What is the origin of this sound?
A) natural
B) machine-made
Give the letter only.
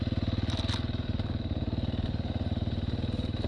A